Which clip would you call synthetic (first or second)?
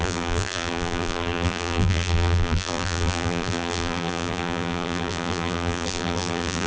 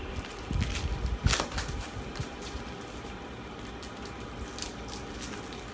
first